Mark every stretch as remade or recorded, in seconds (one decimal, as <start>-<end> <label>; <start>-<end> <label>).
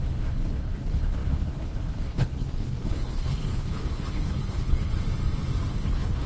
0.0-4.9 remade; 4.9-5.7 recorded; 5.7-6.3 remade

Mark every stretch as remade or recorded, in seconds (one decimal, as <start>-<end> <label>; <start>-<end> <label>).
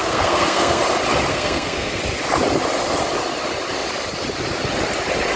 0.0-0.8 remade; 0.8-1.3 recorded; 1.3-2.0 remade; 2.0-5.4 recorded